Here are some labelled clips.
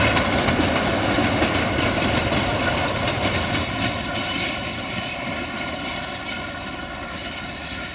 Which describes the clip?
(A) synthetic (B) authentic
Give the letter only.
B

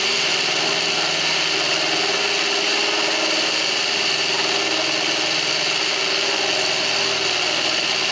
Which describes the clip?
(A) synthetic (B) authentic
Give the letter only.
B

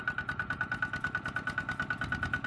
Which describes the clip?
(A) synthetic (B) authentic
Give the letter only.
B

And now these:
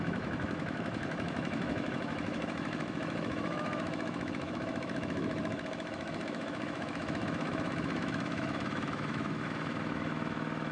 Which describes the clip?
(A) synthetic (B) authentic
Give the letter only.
A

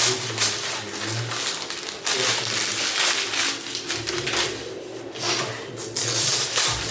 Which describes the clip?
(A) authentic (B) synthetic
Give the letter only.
A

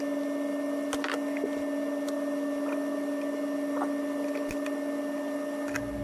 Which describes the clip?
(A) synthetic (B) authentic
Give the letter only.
B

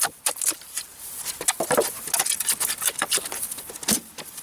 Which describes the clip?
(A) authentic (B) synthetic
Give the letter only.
A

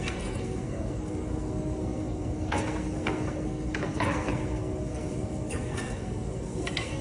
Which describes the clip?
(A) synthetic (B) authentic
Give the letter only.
A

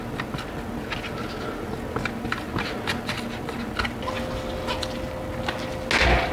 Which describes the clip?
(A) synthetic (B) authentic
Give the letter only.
B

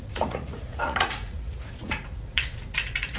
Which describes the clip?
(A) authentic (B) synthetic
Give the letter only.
B